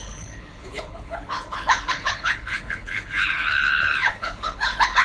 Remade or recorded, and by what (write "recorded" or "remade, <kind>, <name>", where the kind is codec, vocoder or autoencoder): remade, codec, HILCodec